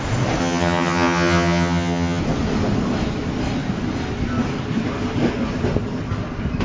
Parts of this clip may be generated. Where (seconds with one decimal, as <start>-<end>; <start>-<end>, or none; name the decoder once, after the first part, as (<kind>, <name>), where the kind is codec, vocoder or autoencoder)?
0.4-2.2 (vocoder, HiFi-GAN)